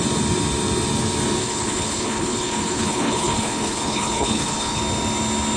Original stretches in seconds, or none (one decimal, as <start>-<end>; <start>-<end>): 0.0-1.4; 4.8-5.6